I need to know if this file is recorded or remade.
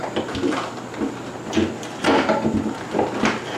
recorded